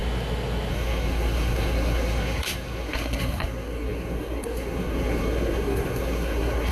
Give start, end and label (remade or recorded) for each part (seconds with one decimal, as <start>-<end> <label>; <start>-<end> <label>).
0.0-0.7 recorded; 0.7-6.7 remade